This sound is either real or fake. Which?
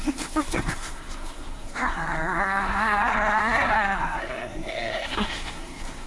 fake